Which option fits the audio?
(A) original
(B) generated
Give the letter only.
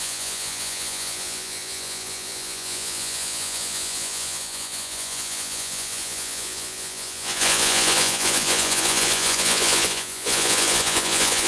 B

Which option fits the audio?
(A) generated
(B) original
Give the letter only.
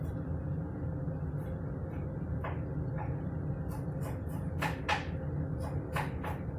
B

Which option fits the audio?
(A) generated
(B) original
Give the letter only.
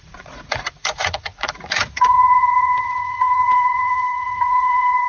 A